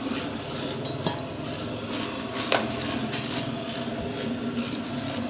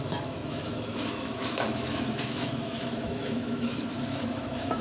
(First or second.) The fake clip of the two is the second